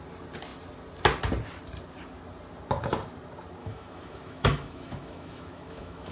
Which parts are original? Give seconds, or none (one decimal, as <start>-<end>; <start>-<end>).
0.0-3.6

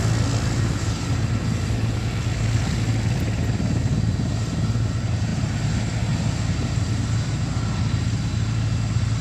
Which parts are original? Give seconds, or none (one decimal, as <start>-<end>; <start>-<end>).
0.0-9.2

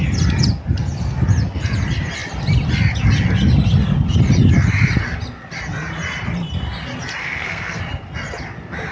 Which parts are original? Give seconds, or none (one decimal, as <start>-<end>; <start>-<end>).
0.0-7.2; 7.8-8.9

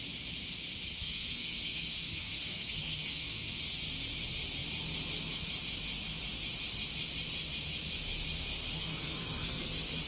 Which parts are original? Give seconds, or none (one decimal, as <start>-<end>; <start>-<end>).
0.0-1.0; 3.6-8.7; 9.7-10.1

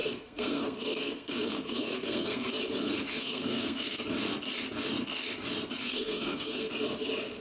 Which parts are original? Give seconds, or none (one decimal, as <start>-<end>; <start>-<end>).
2.6-3.1; 4.0-5.8; 6.7-7.4

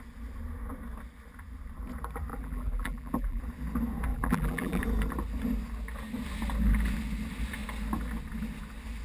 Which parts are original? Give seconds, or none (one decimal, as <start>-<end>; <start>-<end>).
0.0-2.3; 3.4-4.1; 4.8-9.0

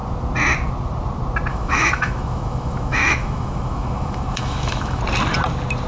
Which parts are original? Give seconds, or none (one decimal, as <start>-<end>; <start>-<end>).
0.0-1.5; 5.0-5.9

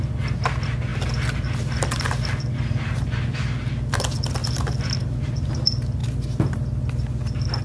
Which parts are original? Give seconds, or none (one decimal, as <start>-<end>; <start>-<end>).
0.0-0.9; 2.2-4.4; 5.5-6.0